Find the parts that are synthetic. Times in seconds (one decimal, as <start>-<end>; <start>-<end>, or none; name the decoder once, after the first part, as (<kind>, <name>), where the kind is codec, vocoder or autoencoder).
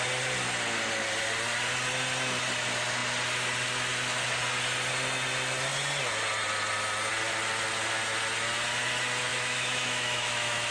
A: 9.3-10.7 (autoencoder, DAC-VAE)